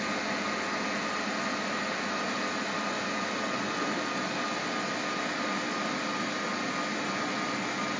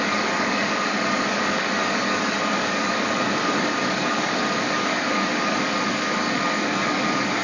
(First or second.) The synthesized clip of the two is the second